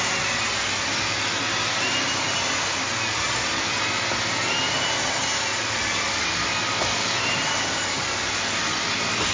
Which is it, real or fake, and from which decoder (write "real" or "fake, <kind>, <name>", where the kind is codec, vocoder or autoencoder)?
real